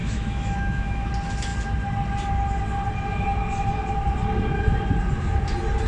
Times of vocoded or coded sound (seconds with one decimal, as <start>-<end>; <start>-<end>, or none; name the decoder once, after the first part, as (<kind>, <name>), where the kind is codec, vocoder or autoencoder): 0.0-1.1 (autoencoder, DAC-VAE)